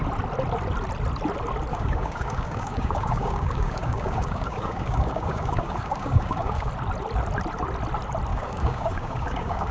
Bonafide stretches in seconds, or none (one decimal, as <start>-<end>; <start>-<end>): 0.0-1.7; 6.7-8.3